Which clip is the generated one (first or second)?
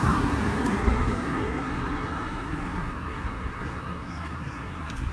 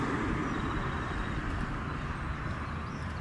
first